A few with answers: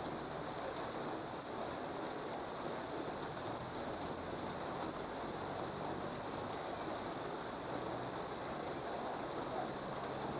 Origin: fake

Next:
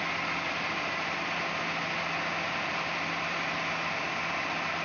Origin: real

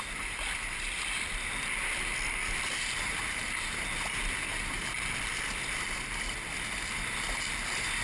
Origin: real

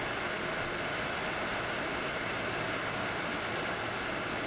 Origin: real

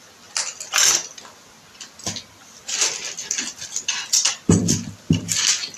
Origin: real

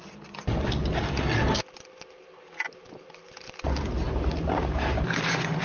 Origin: real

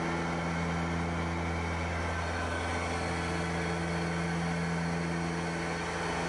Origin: real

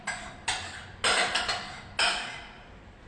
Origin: real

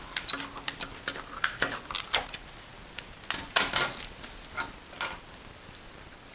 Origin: real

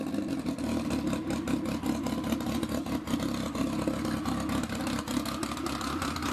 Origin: real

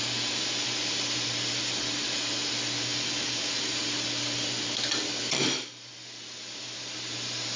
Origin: real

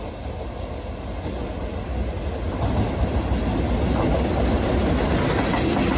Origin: real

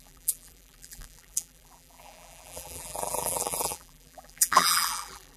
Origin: fake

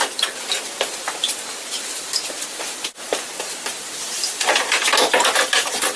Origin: real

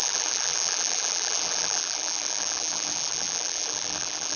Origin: fake